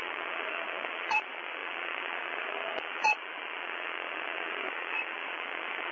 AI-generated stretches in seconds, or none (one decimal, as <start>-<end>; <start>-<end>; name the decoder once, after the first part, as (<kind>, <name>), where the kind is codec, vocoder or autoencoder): 0.0-5.9 (vocoder, Vocos)